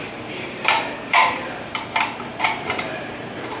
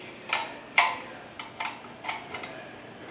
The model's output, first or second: first